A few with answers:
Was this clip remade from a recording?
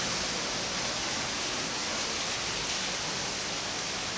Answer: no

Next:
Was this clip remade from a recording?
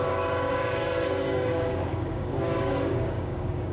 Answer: yes